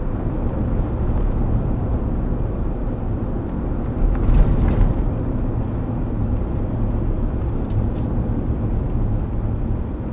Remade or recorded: recorded